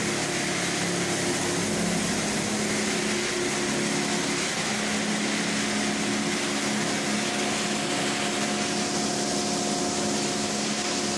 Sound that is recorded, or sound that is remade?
recorded